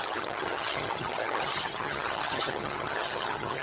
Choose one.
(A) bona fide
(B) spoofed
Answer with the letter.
B